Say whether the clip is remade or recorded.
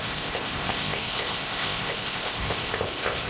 remade